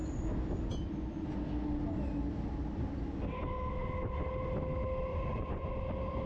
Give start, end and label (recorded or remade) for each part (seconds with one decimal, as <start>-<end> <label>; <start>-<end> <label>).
0.0-5.1 recorded; 5.1-5.7 remade; 5.7-6.3 recorded